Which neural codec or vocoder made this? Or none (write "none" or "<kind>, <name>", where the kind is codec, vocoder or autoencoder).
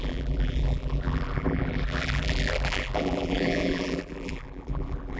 vocoder, BigVGAN v2